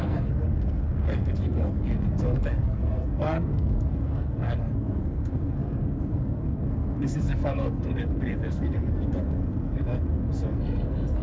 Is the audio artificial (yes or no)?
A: yes